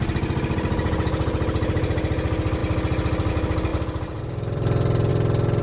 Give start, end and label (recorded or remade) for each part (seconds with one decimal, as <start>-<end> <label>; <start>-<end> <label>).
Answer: 0.0-3.7 recorded; 3.7-5.1 remade; 5.1-5.6 recorded

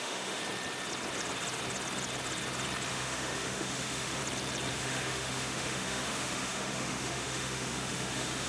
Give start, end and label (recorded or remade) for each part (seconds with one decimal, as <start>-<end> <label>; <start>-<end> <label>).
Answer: 0.0-0.4 remade; 0.4-2.9 recorded; 2.9-4.2 remade; 4.2-4.7 recorded; 4.7-8.5 remade